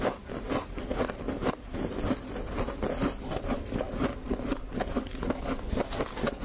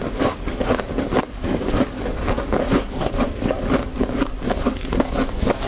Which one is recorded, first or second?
first